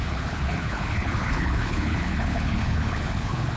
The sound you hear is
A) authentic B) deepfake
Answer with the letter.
B